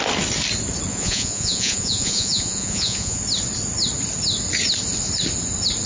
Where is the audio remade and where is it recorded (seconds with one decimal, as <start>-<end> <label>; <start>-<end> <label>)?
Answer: 0.0-0.9 recorded; 0.9-3.2 remade; 3.2-5.9 recorded